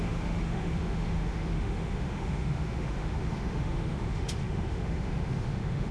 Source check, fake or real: fake